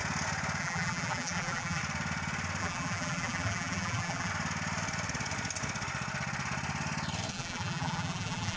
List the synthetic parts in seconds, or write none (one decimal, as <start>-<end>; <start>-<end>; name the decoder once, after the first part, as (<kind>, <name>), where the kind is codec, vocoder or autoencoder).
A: 0.6-1.8 (vocoder, BigVGAN v2); 2.6-4.3; 7.3-8.6